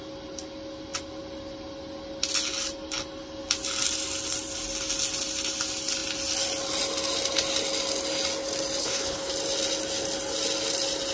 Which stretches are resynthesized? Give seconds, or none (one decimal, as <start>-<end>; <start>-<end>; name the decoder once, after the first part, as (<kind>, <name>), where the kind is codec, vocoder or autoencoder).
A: 8.8-9.3 (codec, HILCodec)